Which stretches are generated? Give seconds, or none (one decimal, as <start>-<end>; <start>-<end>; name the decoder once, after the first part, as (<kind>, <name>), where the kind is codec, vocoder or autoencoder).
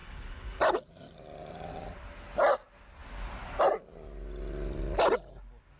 0.0-0.6 (codec, HILCodec)